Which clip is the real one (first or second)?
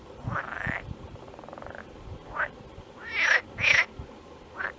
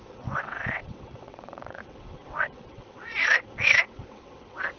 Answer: first